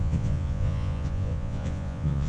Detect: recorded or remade remade